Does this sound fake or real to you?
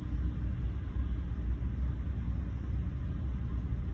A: real